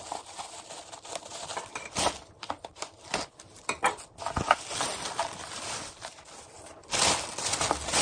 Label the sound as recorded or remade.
recorded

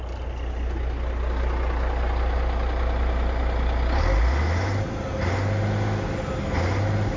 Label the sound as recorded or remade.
recorded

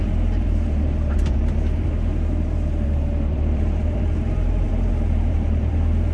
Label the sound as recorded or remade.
remade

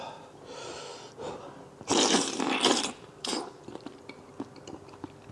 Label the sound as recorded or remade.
remade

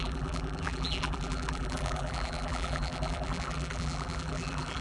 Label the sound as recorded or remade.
remade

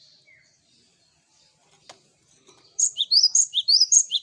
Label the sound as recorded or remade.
remade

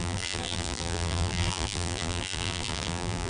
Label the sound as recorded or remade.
remade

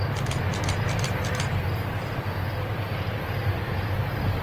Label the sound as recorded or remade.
recorded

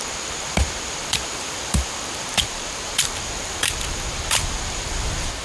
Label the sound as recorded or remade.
remade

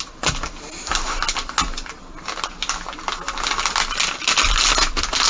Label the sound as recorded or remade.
recorded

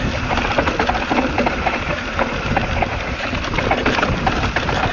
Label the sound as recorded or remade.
recorded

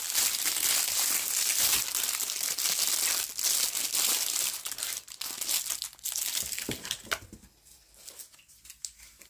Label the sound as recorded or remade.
recorded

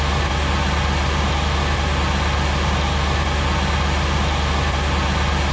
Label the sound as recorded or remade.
recorded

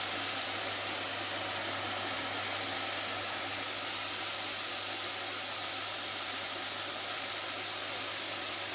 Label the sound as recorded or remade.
recorded